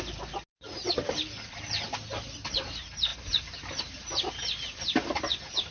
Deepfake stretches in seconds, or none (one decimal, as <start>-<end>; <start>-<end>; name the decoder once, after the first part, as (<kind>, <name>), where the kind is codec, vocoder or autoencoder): 0.5-1.6 (vocoder, BigVGAN v2)